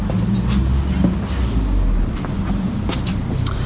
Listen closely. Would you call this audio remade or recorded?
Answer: recorded